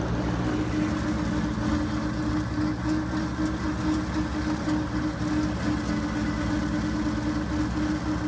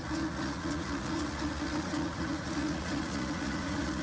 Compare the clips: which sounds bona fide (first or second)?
first